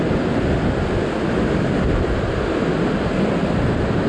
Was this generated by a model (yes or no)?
no